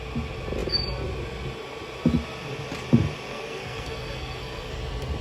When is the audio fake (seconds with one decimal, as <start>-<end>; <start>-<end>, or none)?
3.3-4.8